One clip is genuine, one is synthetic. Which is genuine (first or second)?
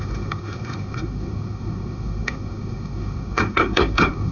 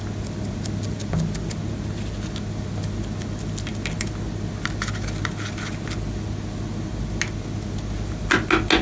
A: second